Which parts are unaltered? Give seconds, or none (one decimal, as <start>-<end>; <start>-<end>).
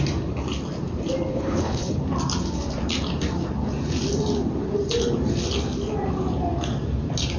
0.0-1.3; 2.0-7.4